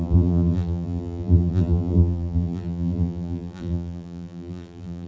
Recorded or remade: remade